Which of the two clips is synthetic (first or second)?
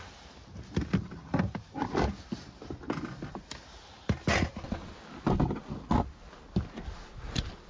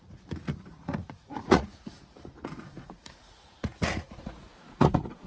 second